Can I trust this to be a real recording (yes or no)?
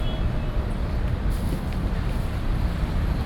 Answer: no